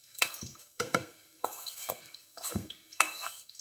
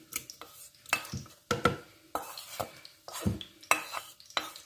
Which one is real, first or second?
second